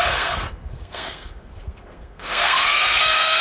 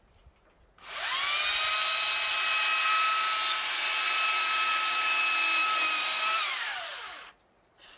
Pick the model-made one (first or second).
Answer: first